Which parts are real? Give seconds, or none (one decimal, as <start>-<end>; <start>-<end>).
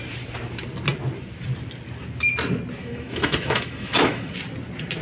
0.0-2.8; 4.3-5.0